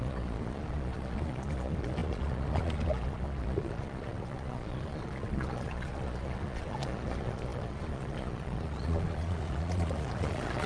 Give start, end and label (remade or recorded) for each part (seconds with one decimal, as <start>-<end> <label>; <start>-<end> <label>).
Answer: 0.0-10.7 remade